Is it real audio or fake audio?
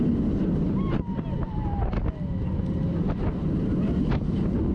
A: real